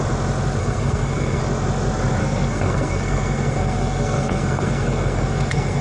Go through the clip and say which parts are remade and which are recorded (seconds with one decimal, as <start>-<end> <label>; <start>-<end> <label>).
0.0-0.6 recorded; 0.6-1.4 remade; 1.4-2.2 recorded; 2.2-5.8 remade